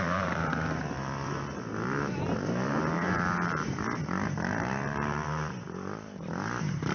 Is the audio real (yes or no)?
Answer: no